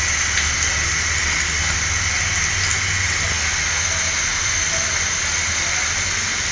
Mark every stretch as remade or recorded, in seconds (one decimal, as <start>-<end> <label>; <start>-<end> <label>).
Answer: 0.0-6.5 recorded